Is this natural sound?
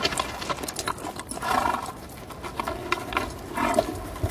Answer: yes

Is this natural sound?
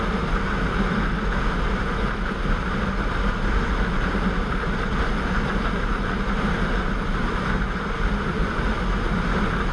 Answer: yes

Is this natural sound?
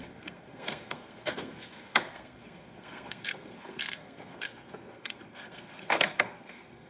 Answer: no